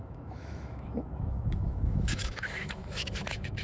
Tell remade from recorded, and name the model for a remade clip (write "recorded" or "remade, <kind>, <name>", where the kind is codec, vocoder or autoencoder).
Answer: remade, autoencoder, DAC-VAE